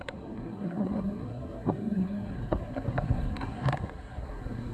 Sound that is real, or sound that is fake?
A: fake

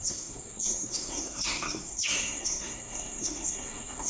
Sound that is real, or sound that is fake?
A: fake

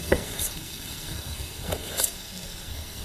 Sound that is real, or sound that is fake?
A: fake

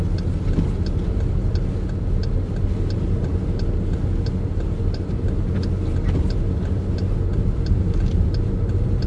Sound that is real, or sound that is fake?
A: real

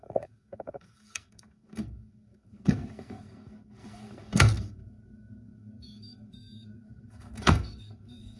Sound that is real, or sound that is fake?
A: fake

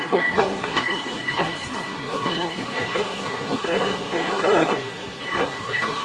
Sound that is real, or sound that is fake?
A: fake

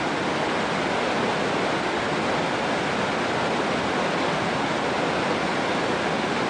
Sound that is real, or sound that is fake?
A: real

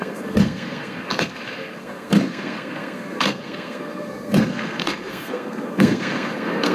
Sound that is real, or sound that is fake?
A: fake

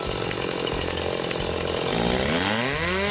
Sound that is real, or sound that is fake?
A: real